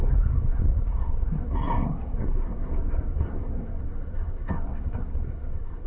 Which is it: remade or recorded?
remade